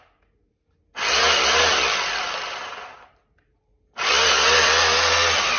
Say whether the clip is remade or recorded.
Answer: recorded